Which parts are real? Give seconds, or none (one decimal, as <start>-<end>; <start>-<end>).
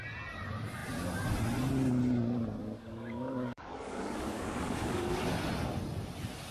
0.0-2.6; 5.2-6.5